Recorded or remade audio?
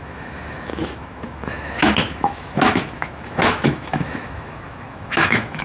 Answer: remade